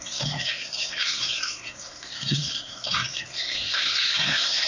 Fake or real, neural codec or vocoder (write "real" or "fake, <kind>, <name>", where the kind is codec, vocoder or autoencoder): fake, codec, SNAC